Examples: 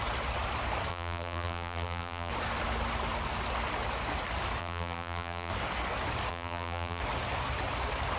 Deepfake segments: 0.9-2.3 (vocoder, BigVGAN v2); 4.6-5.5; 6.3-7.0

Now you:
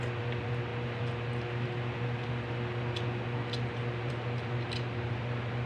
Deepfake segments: none